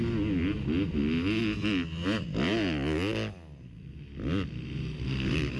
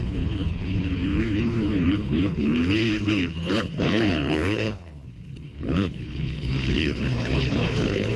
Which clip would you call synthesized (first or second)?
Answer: second